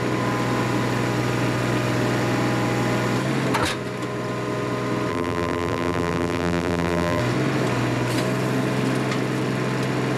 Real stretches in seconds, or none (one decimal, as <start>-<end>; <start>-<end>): 0.0-5.1; 7.2-10.2